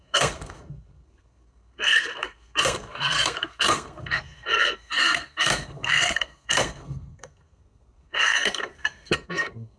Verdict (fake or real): fake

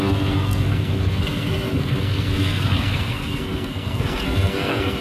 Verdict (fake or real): fake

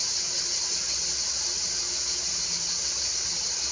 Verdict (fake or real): real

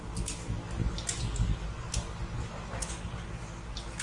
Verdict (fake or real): real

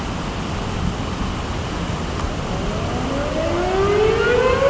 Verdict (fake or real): real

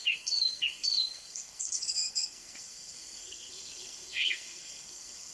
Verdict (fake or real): fake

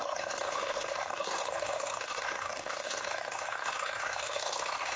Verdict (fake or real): fake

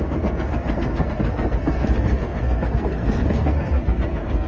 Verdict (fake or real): fake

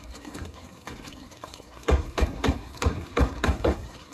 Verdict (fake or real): fake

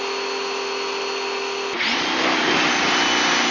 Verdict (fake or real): real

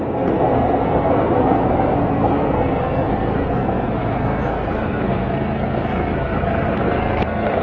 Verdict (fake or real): fake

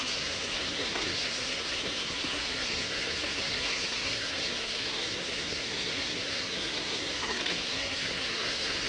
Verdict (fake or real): fake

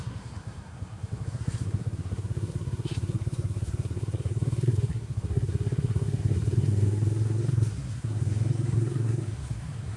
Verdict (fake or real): fake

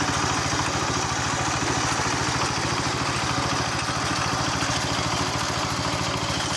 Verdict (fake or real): real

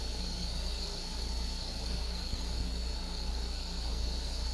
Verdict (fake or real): fake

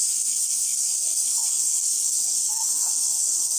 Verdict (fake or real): fake